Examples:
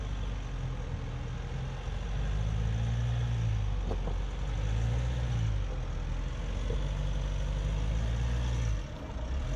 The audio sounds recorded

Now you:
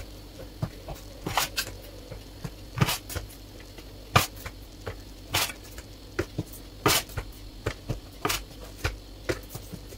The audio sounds recorded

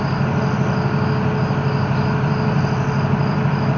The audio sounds recorded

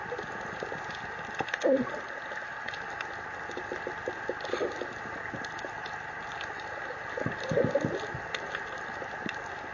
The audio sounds recorded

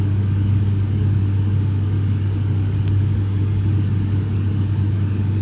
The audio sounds remade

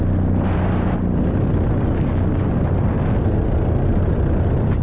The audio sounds recorded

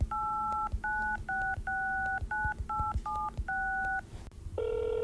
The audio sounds recorded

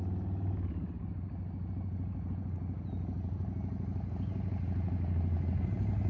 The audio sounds recorded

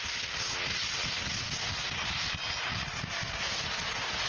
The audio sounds recorded